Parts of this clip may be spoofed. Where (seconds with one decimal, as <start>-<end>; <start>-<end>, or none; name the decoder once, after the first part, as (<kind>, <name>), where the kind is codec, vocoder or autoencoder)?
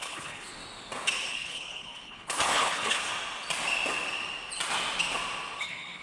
0.0-0.6 (codec, HILCodec); 1.3-3.1; 5.6-6.0